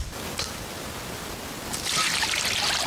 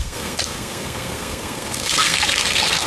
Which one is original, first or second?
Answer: first